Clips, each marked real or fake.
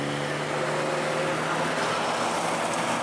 real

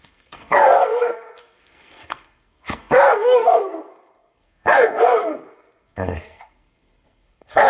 fake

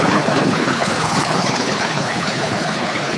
fake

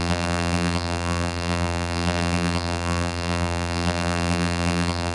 fake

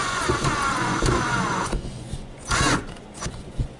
fake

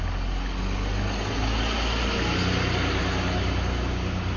real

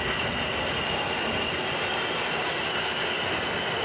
real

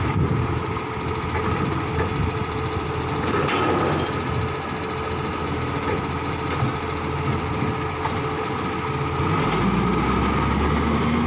real